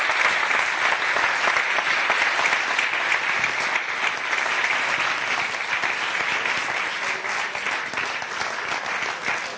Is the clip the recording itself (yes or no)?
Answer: yes